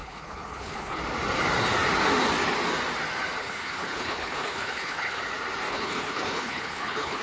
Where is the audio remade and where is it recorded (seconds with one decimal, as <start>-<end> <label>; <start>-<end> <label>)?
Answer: 0.0-1.0 remade; 1.0-3.4 recorded; 3.4-5.2 remade; 5.2-5.7 recorded; 5.7-7.2 remade